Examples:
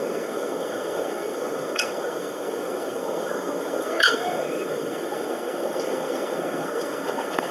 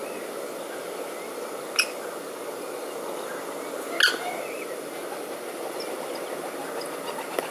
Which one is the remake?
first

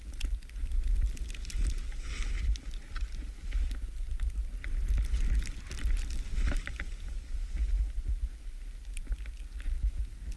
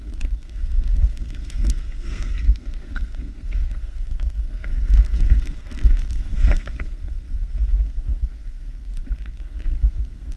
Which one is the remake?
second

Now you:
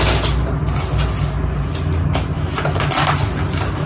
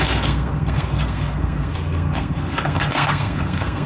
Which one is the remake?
second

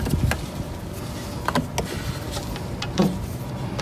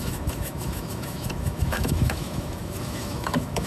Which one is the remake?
second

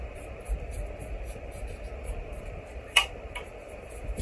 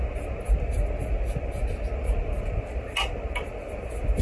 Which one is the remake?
first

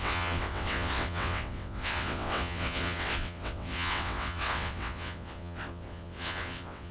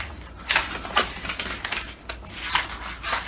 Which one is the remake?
first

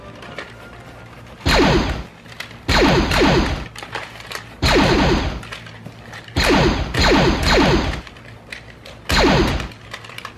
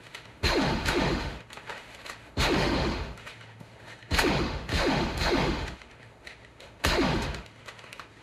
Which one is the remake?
second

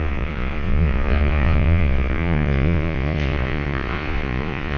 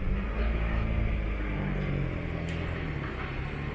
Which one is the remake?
first